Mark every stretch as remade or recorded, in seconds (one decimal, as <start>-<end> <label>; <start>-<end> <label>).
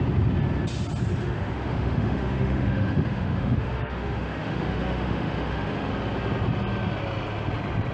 0.0-1.2 recorded; 1.2-5.9 remade; 5.9-7.9 recorded